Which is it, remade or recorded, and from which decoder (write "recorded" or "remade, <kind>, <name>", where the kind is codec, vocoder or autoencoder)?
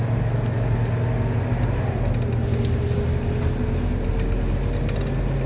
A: recorded